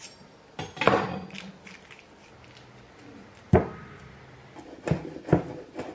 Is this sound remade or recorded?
recorded